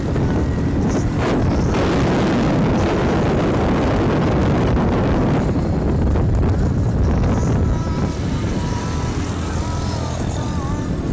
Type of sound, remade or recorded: recorded